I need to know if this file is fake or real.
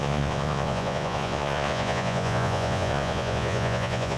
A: fake